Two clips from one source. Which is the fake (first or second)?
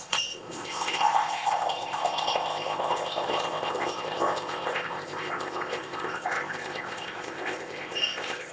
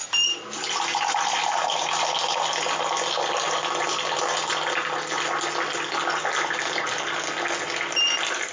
first